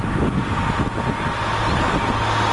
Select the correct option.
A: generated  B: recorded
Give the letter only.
B